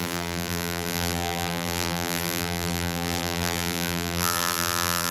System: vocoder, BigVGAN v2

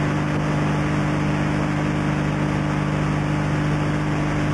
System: none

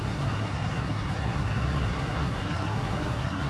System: codec, SNAC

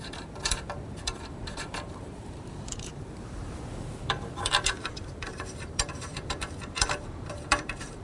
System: vocoder, BigVGAN v2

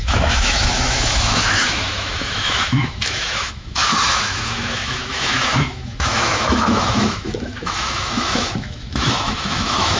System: autoencoder, DAC-VAE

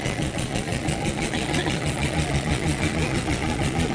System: vocoder, Vocos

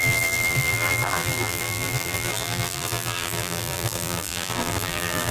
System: vocoder, BigVGAN v2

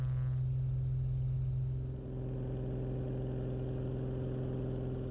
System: none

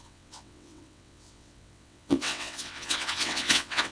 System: vocoder, WaveNeXt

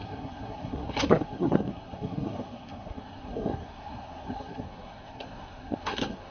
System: codec, SNAC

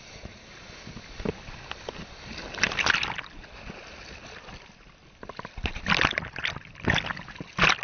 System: none